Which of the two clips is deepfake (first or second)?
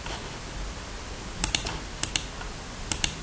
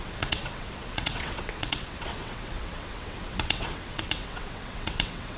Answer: second